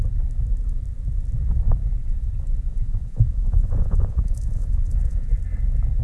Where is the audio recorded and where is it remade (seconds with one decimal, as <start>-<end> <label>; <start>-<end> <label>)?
0.0-2.7 recorded; 2.7-5.3 remade; 5.3-6.0 recorded